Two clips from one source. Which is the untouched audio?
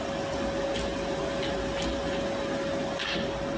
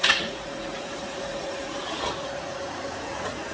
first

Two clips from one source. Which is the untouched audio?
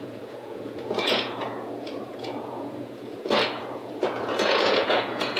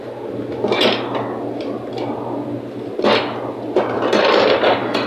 second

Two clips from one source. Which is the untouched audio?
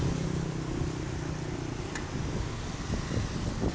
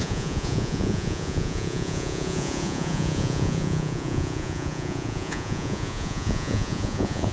first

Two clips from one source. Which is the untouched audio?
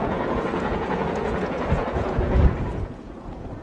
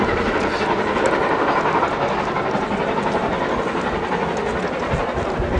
second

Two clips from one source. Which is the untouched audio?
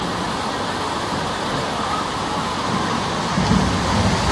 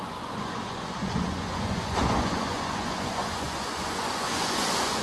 first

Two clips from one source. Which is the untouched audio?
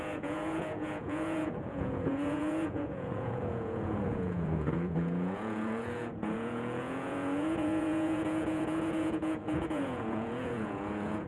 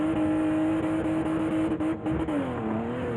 second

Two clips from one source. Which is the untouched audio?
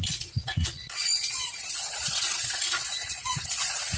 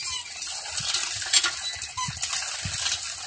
second